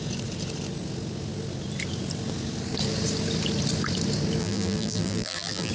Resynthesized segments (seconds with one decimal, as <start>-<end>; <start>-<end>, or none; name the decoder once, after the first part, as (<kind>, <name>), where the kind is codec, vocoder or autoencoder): 4.4-5.7 (vocoder, BigVGAN v2)